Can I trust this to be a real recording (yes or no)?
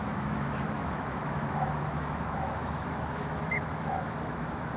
no